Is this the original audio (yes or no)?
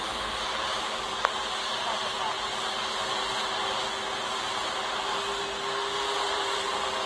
yes